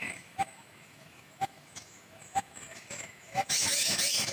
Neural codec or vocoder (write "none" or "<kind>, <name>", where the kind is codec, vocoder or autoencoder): autoencoder, DAC-VAE